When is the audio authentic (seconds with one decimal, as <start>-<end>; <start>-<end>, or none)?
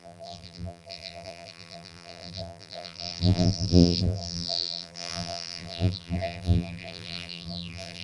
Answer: none